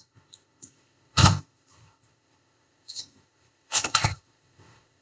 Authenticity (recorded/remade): remade